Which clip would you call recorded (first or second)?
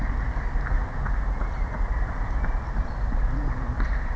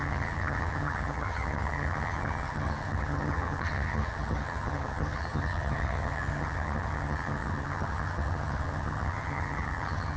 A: first